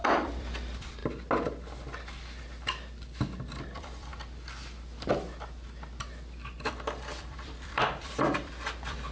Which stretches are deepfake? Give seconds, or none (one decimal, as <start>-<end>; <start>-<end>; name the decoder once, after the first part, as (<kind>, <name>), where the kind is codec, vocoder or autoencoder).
0.0-1.0 (vocoder, BigVGAN v2); 3.6-4.1; 6.7-9.1